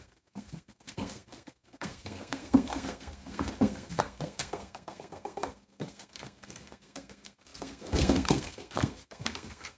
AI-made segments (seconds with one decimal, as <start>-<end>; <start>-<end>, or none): 0.0-9.8

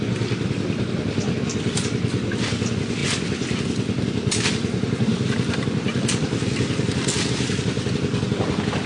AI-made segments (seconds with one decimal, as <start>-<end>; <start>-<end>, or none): none

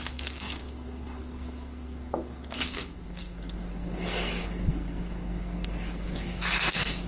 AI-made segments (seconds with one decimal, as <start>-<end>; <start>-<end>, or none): 0.0-7.1

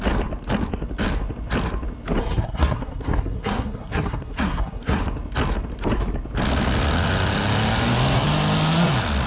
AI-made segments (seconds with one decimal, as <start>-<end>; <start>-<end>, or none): 2.2-5.0

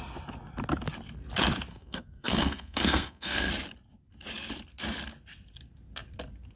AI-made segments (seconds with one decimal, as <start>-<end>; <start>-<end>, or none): 1.7-3.5

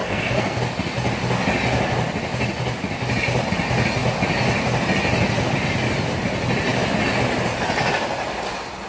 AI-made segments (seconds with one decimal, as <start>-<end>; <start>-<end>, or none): 0.0-0.6

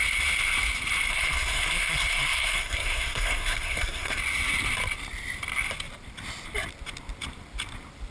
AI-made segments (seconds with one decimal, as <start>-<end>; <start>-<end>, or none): 1.1-4.2